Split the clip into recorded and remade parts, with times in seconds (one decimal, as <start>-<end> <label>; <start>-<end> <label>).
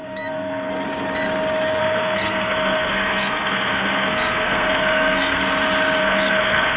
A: 0.0-0.7 remade; 0.7-1.8 recorded; 1.8-5.4 remade; 5.4-6.0 recorded; 6.0-6.8 remade